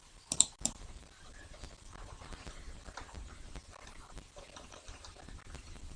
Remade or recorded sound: remade